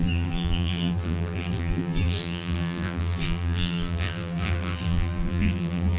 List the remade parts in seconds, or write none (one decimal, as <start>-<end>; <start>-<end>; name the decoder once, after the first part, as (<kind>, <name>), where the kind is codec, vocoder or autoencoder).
0.0-6.0 (vocoder, BigVGAN v2)